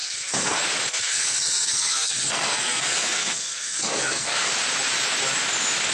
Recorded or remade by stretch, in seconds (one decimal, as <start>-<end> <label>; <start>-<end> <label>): 0.0-0.6 remade; 0.6-1.0 recorded; 1.0-4.5 remade; 4.5-5.9 recorded